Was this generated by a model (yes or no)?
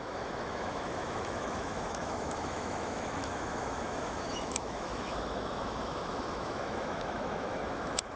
yes